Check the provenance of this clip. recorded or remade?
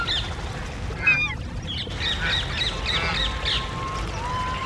recorded